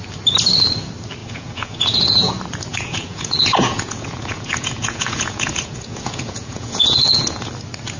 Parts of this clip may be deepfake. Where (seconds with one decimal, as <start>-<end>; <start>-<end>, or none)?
1.2-2.3; 2.7-7.5